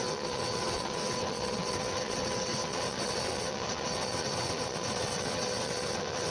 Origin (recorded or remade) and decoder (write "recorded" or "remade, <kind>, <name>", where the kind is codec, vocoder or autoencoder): remade, vocoder, WaveNeXt